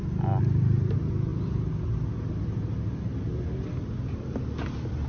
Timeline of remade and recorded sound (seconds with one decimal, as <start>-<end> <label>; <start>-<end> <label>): 0.0-5.1 recorded